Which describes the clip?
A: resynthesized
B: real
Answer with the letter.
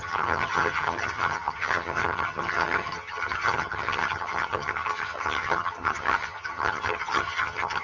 A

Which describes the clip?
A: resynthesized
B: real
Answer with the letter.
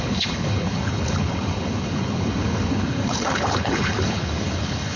A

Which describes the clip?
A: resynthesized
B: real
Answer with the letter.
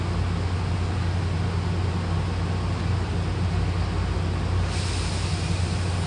B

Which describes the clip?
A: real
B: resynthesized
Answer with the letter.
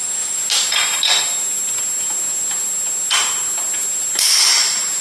A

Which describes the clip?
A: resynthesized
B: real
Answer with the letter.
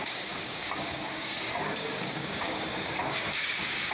A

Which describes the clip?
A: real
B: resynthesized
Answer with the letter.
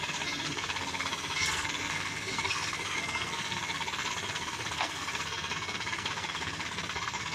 B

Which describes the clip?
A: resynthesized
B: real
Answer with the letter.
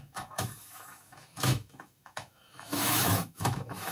A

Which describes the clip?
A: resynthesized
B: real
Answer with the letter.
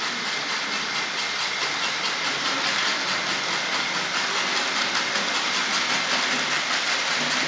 B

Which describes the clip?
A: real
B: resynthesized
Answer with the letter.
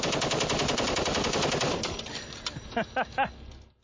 A